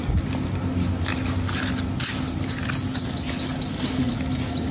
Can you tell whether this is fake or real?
real